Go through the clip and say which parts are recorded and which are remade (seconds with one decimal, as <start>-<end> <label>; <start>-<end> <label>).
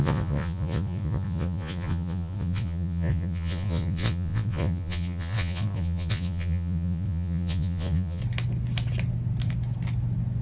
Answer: 0.0-8.2 remade; 8.2-10.4 recorded